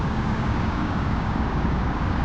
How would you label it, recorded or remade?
remade